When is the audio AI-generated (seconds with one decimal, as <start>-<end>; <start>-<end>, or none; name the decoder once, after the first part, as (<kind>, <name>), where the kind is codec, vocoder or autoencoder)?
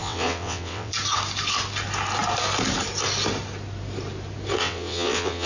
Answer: 0.0-0.9 (vocoder, WaveNeXt); 4.6-5.5